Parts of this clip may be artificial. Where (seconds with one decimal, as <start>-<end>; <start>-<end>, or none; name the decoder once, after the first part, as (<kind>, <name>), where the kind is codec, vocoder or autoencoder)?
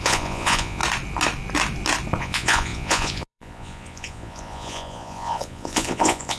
0.0-0.8 (vocoder, Vocos); 2.2-6.4